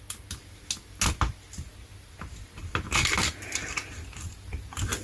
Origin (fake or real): real